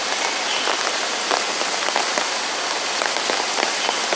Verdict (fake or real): real